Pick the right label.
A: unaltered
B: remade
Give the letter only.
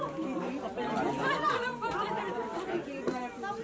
B